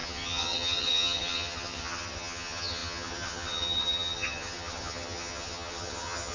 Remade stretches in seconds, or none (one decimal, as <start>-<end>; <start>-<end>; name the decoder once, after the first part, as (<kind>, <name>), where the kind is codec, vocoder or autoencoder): 0.0-6.3 (vocoder, HiFi-GAN)